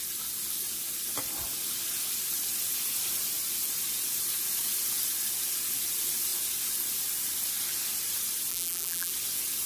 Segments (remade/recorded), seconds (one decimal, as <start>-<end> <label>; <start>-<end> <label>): 0.0-8.5 recorded; 8.5-9.1 remade; 9.1-9.7 recorded